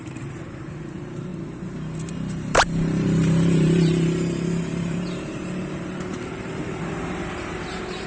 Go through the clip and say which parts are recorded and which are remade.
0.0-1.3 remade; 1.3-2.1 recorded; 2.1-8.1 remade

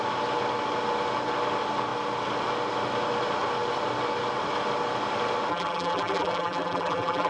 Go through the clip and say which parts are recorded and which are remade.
0.0-5.5 recorded; 5.5-7.3 remade

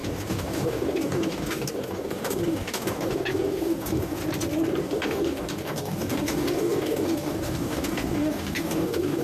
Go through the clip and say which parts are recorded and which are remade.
0.0-4.2 remade; 4.2-4.8 recorded; 4.8-9.2 remade

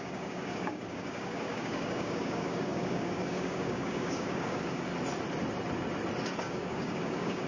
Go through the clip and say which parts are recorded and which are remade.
0.0-4.9 remade; 4.9-6.4 recorded; 6.4-7.5 remade

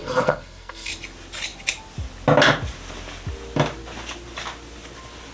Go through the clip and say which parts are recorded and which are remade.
0.0-0.9 remade; 0.9-5.3 recorded

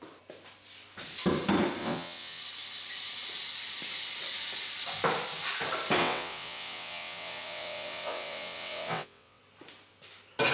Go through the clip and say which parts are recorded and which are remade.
0.0-1.8 recorded; 1.8-2.4 remade; 2.4-6.0 recorded; 6.0-9.4 remade; 9.4-10.5 recorded

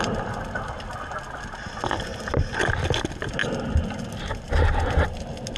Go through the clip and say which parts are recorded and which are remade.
0.0-5.6 recorded